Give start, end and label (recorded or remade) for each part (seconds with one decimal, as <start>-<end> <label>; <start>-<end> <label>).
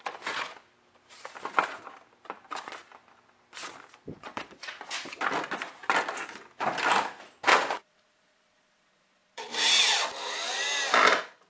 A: 0.0-4.1 recorded; 4.1-4.8 remade; 4.8-7.5 recorded; 7.5-9.5 remade; 9.5-11.5 recorded